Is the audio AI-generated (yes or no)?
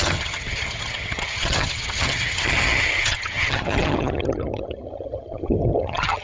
yes